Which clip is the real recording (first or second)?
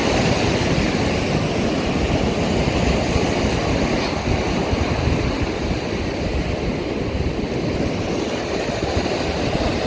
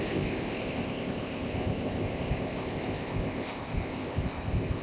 first